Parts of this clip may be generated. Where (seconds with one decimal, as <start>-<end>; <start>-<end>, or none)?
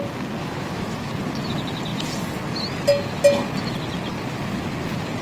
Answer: 0.4-1.1